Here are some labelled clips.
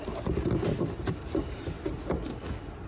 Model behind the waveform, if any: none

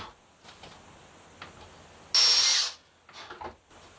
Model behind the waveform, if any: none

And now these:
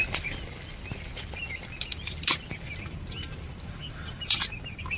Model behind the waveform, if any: vocoder, BigVGAN v2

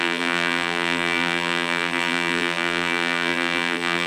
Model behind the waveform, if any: vocoder, BigVGAN v2